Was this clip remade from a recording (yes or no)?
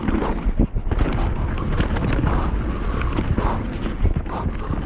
no